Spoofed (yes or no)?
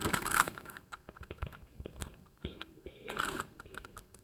yes